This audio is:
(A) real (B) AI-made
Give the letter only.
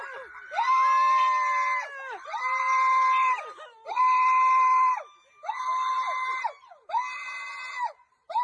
A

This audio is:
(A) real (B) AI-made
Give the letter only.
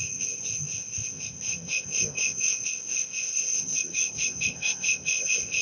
B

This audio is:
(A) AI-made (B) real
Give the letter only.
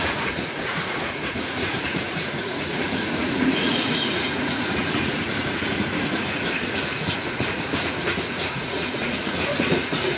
A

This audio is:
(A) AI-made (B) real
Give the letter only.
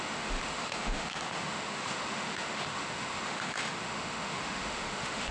A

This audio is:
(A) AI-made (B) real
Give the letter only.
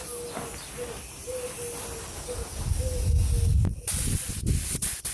B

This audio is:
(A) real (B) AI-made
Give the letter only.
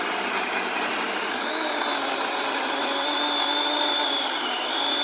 A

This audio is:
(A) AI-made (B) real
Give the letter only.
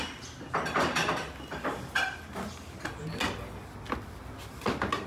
B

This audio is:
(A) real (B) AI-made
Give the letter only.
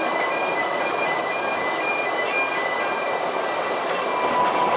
A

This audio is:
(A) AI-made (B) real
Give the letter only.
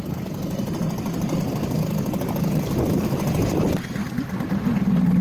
B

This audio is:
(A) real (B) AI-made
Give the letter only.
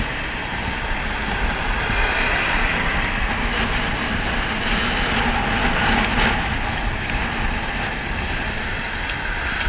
A